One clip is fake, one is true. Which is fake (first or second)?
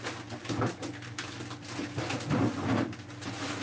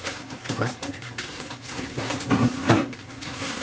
second